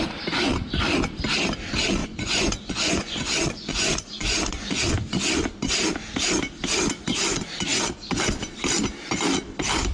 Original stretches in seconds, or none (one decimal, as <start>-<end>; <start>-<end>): 0.0-2.0; 4.8-9.9